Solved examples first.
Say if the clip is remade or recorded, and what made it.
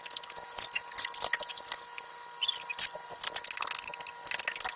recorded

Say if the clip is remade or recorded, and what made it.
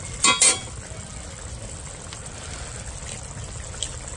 recorded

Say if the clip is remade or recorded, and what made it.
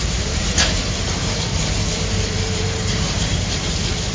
remade, vocoder, BigVGAN v2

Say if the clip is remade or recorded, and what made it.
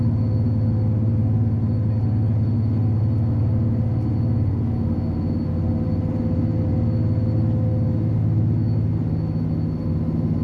recorded